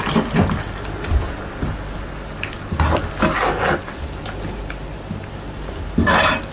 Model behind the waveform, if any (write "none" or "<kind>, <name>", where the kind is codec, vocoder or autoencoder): none